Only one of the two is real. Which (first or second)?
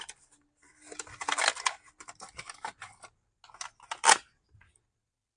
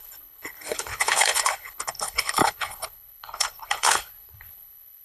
first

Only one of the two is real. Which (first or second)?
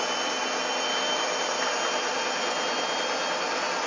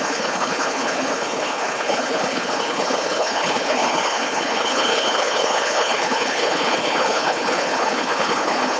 first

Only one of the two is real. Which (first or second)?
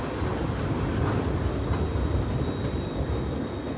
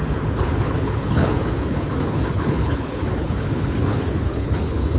first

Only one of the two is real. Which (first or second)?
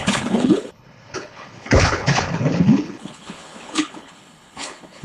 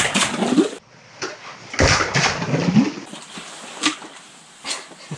second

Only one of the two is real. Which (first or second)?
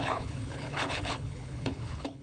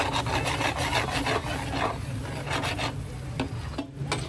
second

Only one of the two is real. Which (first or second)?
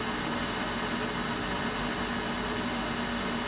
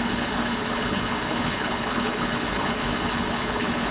first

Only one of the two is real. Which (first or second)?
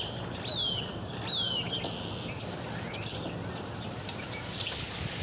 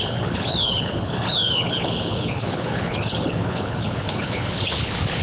first